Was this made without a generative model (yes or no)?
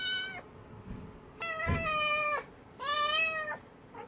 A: yes